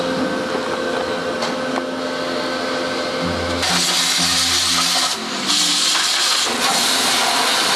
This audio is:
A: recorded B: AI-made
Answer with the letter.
A